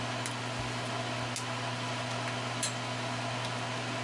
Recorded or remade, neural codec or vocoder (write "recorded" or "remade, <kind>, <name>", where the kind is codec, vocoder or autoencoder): recorded